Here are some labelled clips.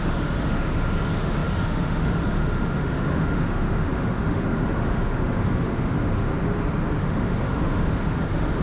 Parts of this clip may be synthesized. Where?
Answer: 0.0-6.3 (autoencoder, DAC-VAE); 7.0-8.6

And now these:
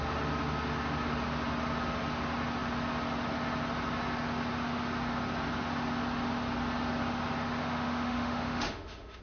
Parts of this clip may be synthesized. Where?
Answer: 7.6-9.2 (autoencoder, DAC-VAE)

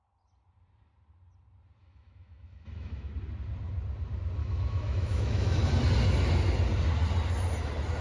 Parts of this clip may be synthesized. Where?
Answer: 1.8-3.1 (autoencoder, DAC-VAE); 4.4-5.7

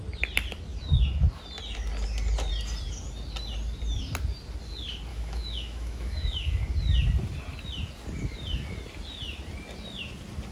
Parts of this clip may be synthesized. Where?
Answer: 5.1-6.6 (autoencoder, DAC-VAE)

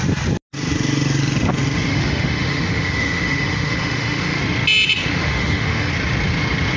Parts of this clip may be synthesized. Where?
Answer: 1.9-4.4 (autoencoder, DAC-VAE); 5.0-5.9